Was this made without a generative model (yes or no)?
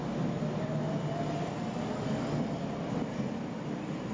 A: yes